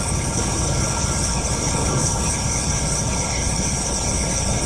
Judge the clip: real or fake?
fake